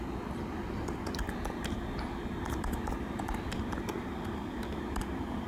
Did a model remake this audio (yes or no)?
no